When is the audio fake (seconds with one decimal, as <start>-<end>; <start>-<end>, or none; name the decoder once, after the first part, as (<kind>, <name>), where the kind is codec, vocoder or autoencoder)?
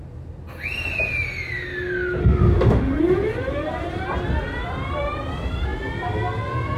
2.2-3.0 (autoencoder, DAC-VAE)